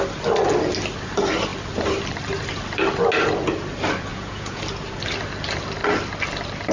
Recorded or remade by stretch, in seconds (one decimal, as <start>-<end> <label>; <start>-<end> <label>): 0.0-4.1 recorded; 4.1-4.6 remade; 4.6-6.7 recorded